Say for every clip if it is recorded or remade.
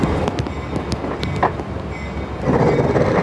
recorded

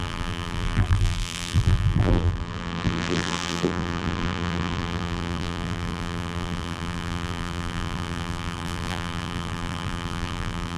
remade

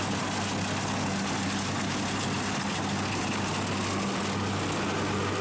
recorded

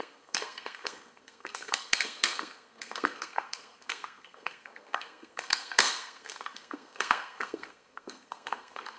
remade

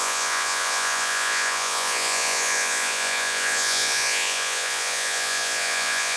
remade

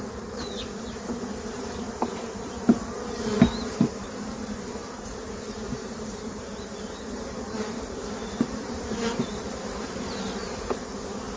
remade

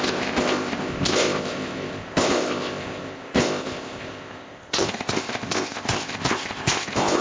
remade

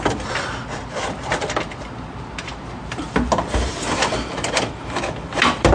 recorded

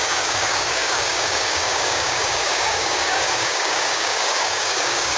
remade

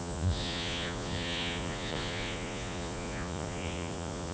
remade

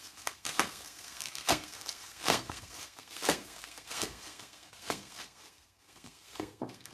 remade